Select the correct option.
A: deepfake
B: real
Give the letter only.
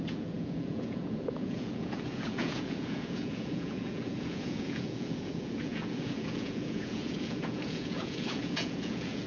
A